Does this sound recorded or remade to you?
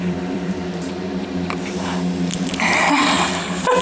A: remade